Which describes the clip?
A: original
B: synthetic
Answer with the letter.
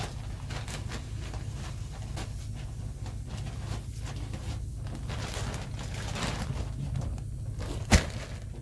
A